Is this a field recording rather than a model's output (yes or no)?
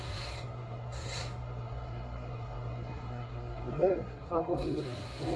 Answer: no